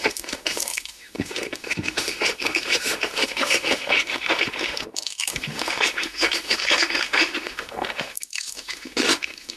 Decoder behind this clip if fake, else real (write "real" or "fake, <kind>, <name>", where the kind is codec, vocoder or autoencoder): fake, autoencoder, DAC-VAE